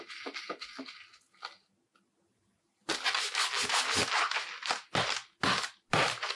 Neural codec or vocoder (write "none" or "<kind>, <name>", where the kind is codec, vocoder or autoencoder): none